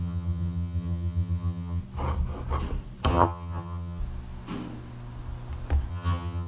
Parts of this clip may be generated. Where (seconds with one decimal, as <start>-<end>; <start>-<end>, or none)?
0.0-1.8; 3.1-4.0; 5.9-6.5